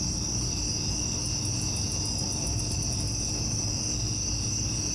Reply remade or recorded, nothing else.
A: recorded